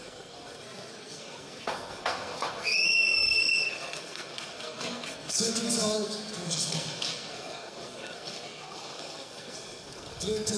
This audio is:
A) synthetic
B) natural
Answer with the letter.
A